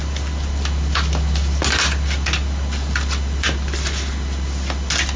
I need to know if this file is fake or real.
real